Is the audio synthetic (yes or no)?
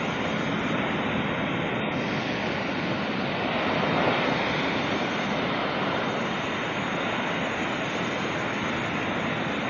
no